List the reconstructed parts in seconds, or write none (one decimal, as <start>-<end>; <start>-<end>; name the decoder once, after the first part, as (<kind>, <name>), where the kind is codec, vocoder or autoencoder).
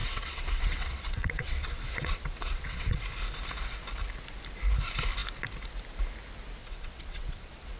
0.0-3.0 (vocoder, WaveNeXt); 6.6-7.8